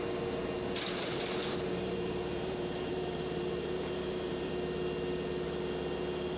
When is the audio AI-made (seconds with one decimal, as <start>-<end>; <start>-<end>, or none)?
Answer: 1.4-4.5